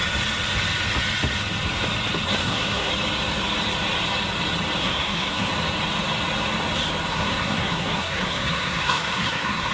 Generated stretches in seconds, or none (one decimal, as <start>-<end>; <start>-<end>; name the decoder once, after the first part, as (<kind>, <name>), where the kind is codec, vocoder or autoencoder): 2.4-2.9 (codec, SNAC); 4.8-5.5; 7.1-9.7

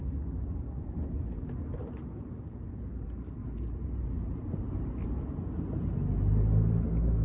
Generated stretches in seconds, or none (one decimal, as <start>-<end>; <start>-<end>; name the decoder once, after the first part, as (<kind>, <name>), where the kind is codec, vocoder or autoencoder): 1.8-6.1 (vocoder, BigVGAN v2)

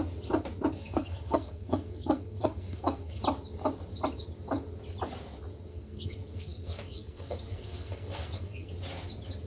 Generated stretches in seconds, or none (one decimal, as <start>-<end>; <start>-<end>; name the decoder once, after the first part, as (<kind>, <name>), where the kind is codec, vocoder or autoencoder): 0.8-3.2 (codec, SNAC); 5.7-8.7

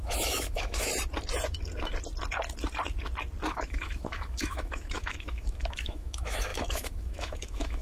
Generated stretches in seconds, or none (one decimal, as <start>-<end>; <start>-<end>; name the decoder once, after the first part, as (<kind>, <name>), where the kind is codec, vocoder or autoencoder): 0.0-0.9 (autoencoder, DAC-VAE); 3.5-7.8

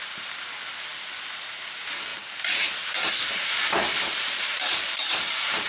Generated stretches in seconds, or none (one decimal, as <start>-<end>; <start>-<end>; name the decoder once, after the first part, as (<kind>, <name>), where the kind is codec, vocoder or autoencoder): 2.1-5.7 (vocoder, BigVGAN v2)

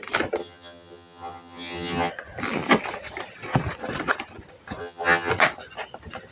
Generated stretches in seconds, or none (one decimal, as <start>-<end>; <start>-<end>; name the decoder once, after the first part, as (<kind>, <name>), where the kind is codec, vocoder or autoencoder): 0.4-2.1 (vocoder, HiFi-GAN); 4.8-5.3

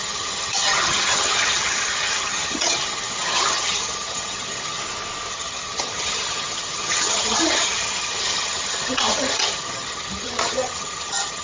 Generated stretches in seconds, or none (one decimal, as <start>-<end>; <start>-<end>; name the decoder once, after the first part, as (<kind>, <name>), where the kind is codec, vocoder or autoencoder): 0.0-4.8 (vocoder, HiFi-GAN); 5.3-11.4

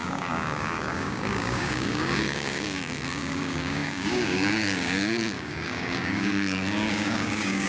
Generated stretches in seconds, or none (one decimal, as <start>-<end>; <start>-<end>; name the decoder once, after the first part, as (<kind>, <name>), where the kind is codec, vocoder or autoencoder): 0.0-7.7 (codec, DAC)